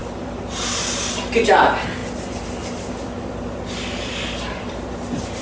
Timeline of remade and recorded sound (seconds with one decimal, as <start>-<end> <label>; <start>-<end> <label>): 0.0-1.4 recorded; 1.4-2.0 remade; 2.0-2.9 recorded; 2.9-5.4 remade